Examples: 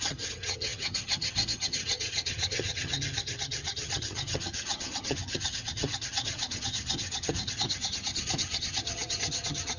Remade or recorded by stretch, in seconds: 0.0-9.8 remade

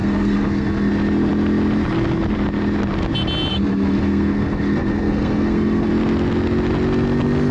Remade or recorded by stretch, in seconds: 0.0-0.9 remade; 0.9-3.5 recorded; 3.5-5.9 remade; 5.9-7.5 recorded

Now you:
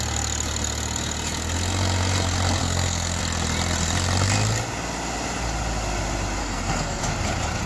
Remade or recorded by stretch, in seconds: 0.0-2.6 recorded; 2.6-3.2 remade; 3.2-6.4 recorded; 6.4-7.0 remade; 7.0-7.7 recorded